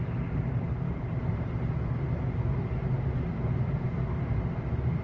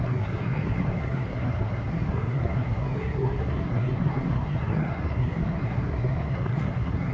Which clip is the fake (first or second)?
second